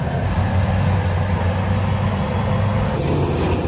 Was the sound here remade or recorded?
recorded